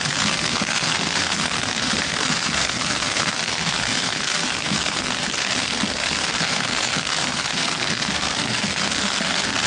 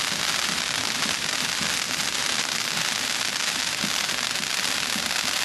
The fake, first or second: first